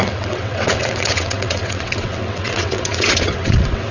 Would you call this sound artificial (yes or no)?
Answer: yes